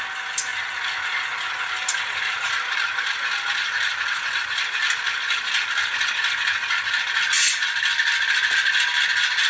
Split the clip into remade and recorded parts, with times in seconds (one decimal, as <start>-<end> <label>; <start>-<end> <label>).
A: 0.0-9.5 recorded